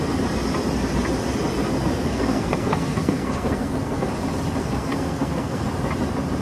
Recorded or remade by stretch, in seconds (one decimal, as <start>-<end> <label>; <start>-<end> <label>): 0.0-2.0 recorded; 2.0-4.1 remade; 4.1-4.6 recorded; 4.6-5.6 remade; 5.6-6.4 recorded